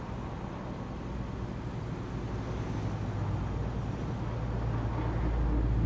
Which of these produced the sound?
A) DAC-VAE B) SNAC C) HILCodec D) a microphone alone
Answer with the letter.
D